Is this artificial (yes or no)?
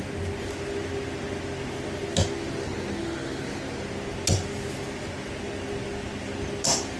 no